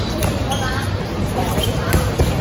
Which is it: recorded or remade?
recorded